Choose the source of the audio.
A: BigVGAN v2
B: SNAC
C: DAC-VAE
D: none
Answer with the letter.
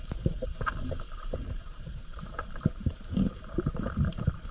A